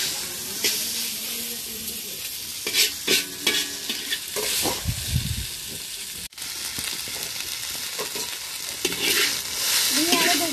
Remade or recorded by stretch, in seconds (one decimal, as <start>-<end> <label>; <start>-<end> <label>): 0.0-10.5 recorded